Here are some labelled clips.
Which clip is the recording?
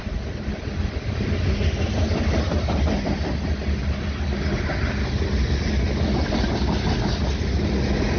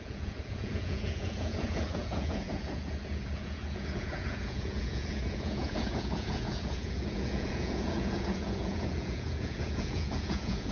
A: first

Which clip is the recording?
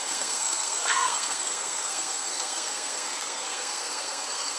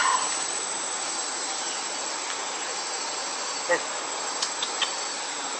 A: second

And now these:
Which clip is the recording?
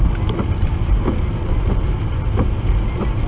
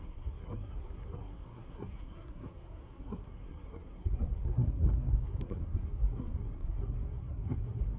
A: first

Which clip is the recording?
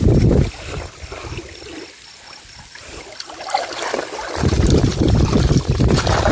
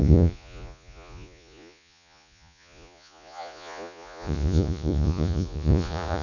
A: first